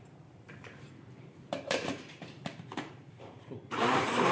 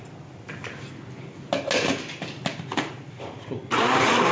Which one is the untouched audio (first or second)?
second